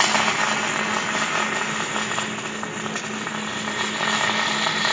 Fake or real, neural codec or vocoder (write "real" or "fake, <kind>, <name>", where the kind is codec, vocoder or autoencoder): real